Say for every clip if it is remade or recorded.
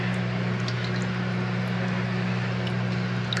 recorded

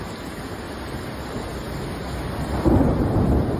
recorded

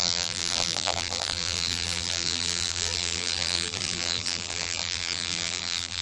remade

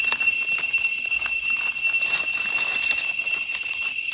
recorded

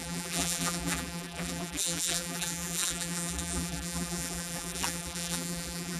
remade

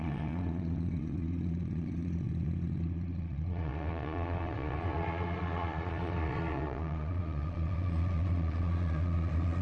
remade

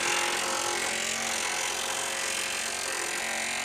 recorded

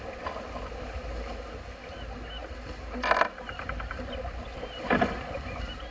recorded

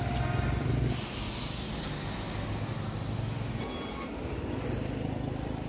recorded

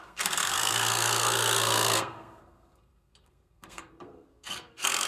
remade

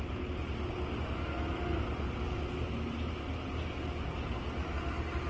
recorded